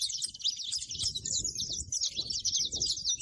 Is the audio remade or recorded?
recorded